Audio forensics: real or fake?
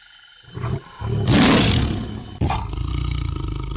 real